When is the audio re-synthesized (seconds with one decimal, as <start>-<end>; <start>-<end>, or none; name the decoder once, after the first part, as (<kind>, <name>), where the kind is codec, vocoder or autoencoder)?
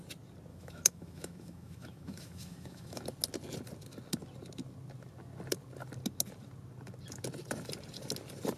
0.5-3.0 (autoencoder, DAC-VAE)